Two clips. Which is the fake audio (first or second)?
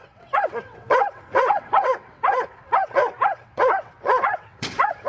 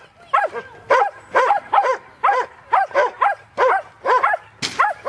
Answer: first